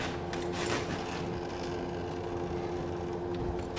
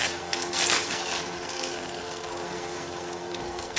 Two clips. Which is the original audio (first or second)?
first